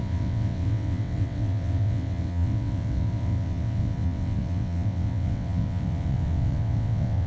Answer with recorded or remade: remade